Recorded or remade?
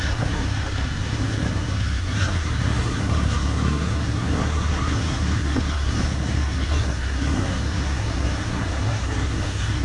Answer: remade